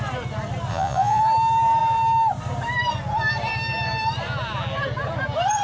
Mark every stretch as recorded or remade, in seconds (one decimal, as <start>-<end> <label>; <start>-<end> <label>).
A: 0.0-0.7 recorded; 0.7-1.2 remade; 1.2-5.6 recorded